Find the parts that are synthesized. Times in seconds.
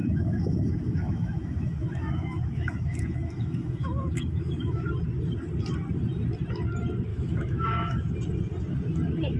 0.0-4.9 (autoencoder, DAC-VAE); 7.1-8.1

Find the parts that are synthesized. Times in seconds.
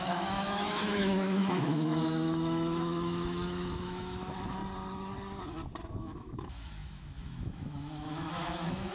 0.0-4.6 (autoencoder, DAC-VAE); 5.9-8.9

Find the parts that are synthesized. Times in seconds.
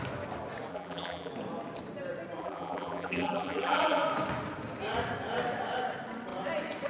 0.7-1.3 (vocoder, BigVGAN v2); 2.4-4.0